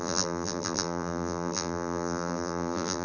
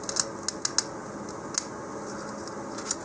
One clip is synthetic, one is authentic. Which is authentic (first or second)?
second